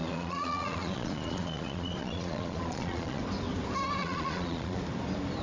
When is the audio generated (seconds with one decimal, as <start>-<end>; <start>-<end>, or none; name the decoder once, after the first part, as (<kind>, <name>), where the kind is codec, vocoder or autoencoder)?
0.0-3.2 (vocoder, Vocos); 4.0-4.8

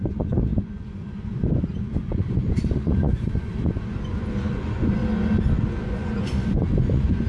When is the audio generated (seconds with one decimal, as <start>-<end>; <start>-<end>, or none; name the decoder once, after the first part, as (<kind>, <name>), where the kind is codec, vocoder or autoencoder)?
0.0-5.0 (vocoder, Vocos); 5.8-7.3